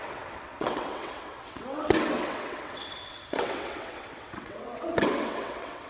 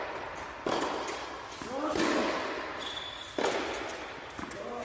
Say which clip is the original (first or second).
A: second